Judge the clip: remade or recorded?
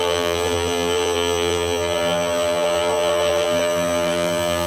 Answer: remade